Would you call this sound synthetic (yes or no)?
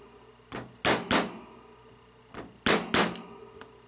no